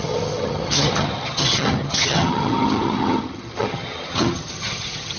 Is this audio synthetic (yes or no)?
yes